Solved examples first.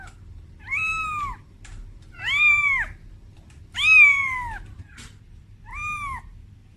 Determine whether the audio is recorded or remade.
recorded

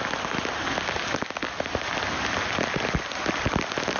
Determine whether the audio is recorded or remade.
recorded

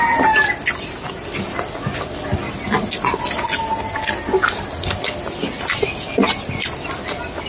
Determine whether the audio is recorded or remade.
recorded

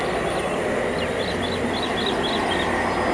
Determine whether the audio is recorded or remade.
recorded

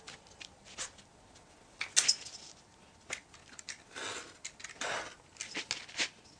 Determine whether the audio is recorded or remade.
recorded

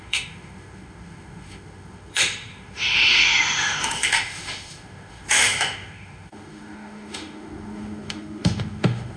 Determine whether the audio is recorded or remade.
remade